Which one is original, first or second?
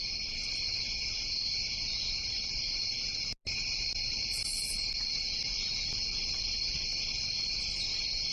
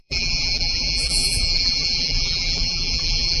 first